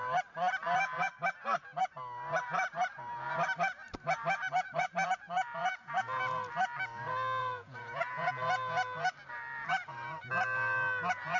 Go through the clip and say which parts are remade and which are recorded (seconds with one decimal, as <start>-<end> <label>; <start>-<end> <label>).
0.0-5.6 recorded; 5.6-6.2 remade; 6.2-7.4 recorded; 7.4-8.3 remade; 8.3-11.4 recorded